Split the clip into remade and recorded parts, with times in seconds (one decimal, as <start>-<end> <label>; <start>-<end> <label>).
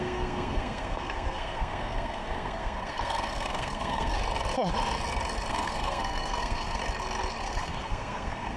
0.0-4.2 remade; 4.2-5.5 recorded; 5.5-6.8 remade; 6.8-7.4 recorded; 7.4-8.6 remade